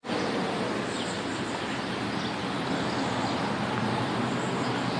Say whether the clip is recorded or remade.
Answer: recorded